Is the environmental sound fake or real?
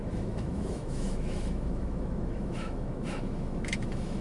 fake